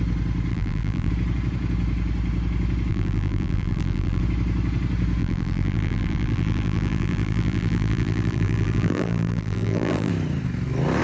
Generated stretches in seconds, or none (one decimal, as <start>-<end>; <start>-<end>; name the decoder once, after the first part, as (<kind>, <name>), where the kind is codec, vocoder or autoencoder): 0.5-1.1 (vocoder, BigVGAN v2); 2.9-4.2; 5.2-10.1